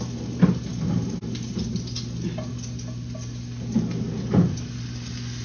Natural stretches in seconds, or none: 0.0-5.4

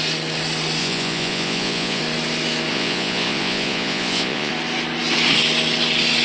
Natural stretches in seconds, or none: 0.0-0.8; 2.0-2.7; 4.5-6.2